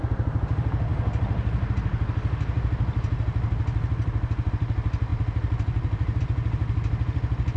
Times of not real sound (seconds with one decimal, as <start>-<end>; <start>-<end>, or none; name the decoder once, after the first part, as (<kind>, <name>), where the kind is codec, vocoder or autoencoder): none